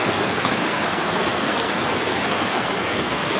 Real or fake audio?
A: fake